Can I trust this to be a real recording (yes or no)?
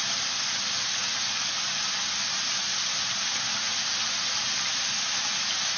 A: yes